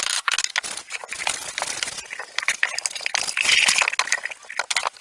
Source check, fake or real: real